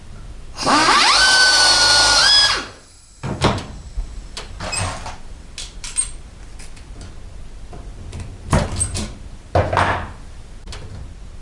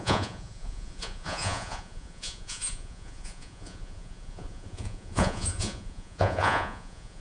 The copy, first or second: second